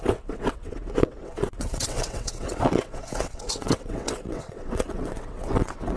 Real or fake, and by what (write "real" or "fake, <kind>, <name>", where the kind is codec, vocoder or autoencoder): fake, vocoder, WaveNeXt